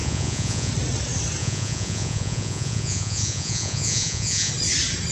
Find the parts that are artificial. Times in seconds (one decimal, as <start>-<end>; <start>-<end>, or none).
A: 0.0-0.7; 1.4-4.5